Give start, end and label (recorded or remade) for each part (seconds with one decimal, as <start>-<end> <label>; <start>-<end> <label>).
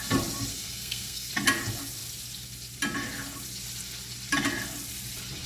0.0-0.5 recorded; 0.5-1.3 remade; 1.3-5.5 recorded